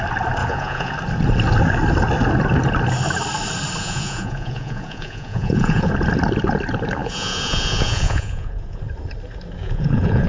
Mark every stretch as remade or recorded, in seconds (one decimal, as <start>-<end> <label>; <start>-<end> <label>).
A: 0.0-0.4 recorded; 0.4-0.9 remade; 0.9-3.8 recorded; 3.8-5.9 remade; 5.9-7.0 recorded; 7.0-8.8 remade; 8.8-9.6 recorded; 9.6-10.3 remade